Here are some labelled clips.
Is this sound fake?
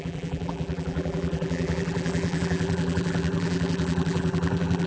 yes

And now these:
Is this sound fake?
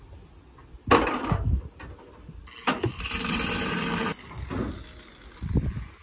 no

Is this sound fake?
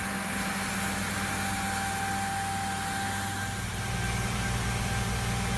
no